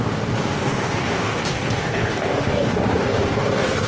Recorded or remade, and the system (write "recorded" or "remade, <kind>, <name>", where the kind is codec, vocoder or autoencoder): remade, codec, DAC